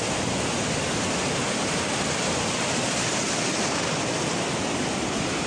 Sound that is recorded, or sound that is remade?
recorded